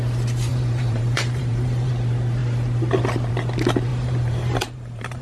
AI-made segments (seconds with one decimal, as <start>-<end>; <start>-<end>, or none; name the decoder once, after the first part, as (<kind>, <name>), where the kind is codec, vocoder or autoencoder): 0.5-1.9 (vocoder, BigVGAN v2); 3.9-5.2